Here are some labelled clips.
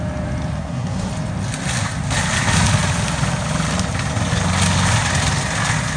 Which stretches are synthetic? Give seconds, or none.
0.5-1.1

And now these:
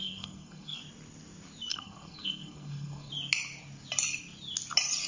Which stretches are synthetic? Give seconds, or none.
0.0-0.8; 1.7-3.1

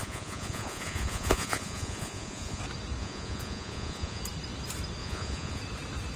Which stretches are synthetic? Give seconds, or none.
0.0-2.6; 3.0-4.2; 5.0-5.6

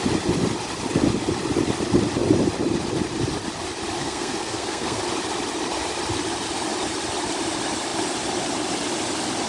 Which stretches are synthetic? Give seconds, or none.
4.0-5.0